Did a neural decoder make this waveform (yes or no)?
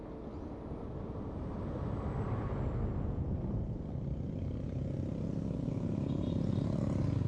no